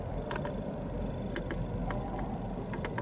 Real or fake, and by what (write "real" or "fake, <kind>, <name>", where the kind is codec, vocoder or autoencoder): real